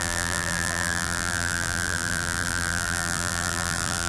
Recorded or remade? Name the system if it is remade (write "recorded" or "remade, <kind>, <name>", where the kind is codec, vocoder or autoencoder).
remade, vocoder, BigVGAN v2